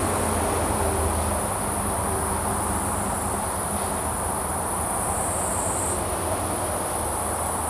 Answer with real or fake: real